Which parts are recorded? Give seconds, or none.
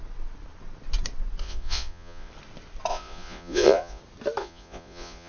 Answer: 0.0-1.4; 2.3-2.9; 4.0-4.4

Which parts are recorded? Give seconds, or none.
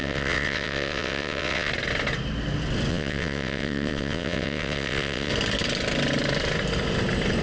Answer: 1.7-2.9; 5.3-7.4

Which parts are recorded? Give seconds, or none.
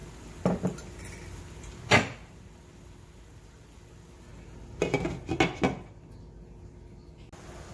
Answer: 0.0-7.7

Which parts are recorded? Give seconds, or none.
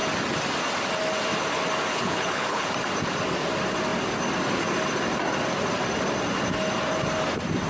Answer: 0.0-1.9; 2.7-7.7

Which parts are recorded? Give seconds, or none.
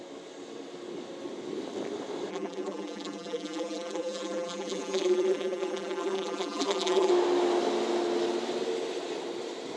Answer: 0.0-2.3; 7.1-9.8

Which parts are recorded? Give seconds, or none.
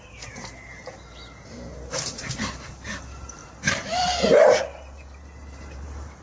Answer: none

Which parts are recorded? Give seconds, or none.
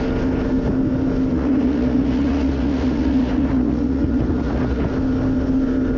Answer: 0.0-1.3; 4.9-6.0